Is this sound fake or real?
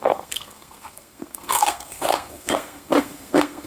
fake